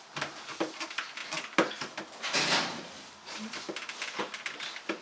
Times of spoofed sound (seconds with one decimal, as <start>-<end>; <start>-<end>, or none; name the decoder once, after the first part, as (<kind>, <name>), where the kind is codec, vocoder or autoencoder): none